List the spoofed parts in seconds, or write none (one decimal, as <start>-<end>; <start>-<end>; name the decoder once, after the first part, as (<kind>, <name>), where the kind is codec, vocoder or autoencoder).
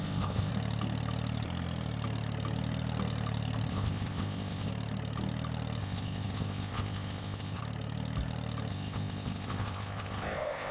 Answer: 0.0-0.5 (codec, ZipCodec); 3.7-4.7; 5.8-7.6; 8.7-10.7